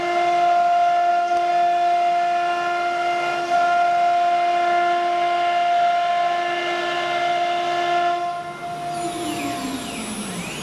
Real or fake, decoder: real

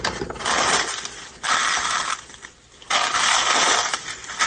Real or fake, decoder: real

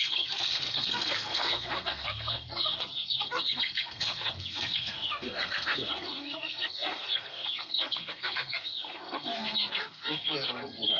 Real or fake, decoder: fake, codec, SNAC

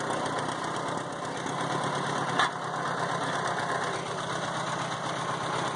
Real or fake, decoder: real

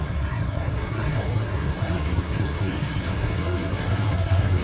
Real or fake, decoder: fake, codec, SNAC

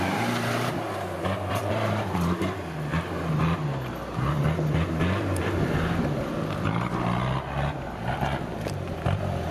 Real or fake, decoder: real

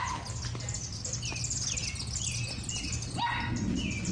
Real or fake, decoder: real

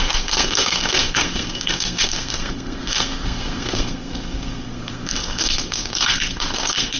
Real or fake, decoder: fake, codec, SNAC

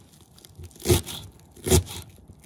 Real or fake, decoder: real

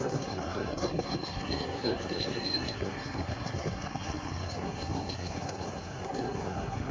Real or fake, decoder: fake, codec, SNAC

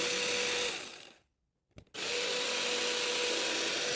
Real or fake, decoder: real